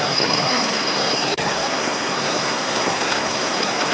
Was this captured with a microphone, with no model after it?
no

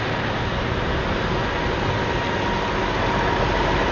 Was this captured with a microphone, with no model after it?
yes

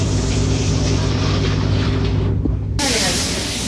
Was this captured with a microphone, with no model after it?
no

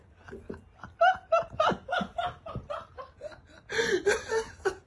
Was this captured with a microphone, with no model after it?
yes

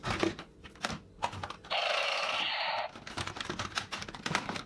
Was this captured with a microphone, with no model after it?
yes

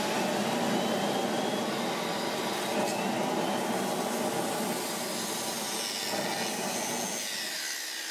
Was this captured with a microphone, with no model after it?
yes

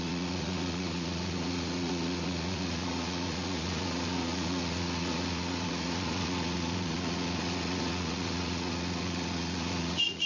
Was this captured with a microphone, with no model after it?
no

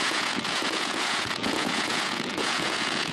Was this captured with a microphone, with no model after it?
no